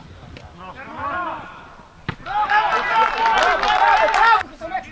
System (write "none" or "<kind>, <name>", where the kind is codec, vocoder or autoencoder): none